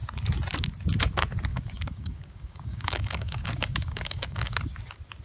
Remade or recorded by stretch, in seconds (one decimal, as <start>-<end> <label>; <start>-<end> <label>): 0.0-1.5 recorded; 1.5-4.6 remade; 4.6-5.2 recorded